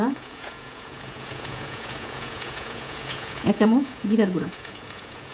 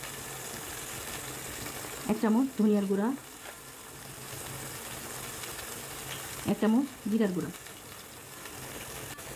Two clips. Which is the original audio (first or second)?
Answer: second